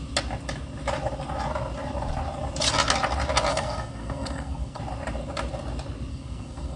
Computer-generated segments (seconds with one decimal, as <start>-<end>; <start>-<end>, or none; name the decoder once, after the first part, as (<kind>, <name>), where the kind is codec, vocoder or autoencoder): 3.5-4.8 (codec, SNAC); 6.1-6.8